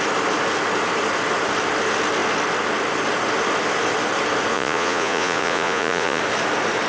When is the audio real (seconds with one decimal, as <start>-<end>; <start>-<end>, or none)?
0.0-4.5; 6.2-6.9